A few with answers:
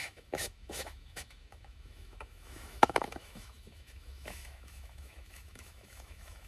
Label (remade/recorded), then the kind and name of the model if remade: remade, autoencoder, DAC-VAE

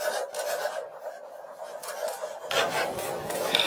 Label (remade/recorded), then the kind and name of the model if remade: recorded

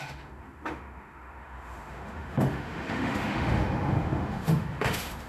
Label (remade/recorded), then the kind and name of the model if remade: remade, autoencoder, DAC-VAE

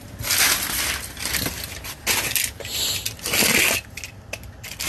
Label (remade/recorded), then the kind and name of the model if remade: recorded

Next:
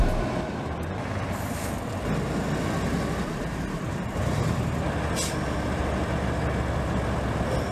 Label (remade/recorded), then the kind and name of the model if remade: recorded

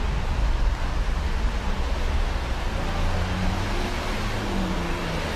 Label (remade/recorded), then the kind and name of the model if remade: recorded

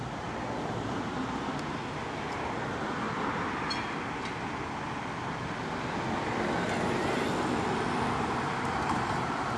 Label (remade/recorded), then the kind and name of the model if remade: recorded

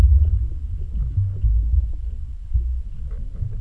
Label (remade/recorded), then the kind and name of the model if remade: recorded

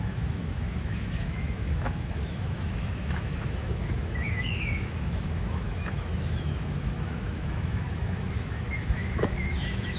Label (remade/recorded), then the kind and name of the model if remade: remade, autoencoder, DAC-VAE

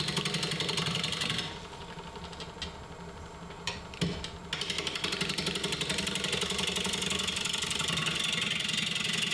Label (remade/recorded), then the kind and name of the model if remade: recorded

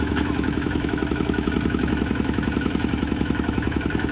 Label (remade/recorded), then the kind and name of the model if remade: remade, autoencoder, DAC-VAE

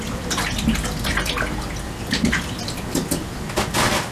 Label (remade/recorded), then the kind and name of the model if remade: recorded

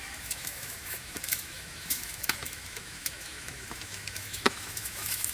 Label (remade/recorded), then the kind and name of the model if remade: remade, autoencoder, DAC-VAE